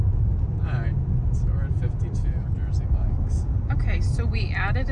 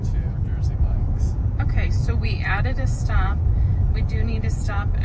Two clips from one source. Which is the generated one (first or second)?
second